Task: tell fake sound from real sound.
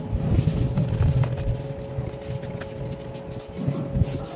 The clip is real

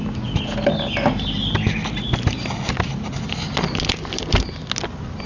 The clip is real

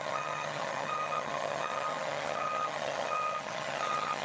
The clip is fake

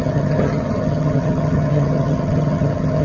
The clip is fake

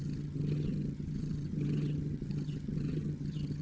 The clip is fake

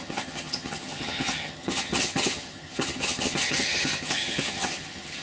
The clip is fake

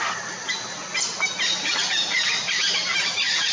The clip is real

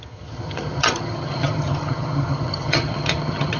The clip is fake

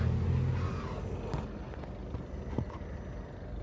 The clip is real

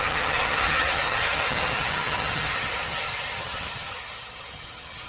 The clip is fake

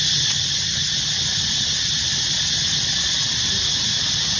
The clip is real